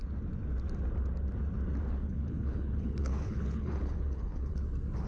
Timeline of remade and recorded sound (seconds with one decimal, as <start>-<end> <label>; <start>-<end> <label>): 0.0-1.9 recorded; 1.9-4.6 remade; 4.6-5.1 recorded